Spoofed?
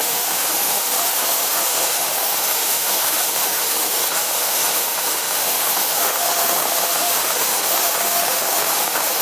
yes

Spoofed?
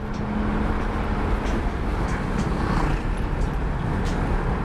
no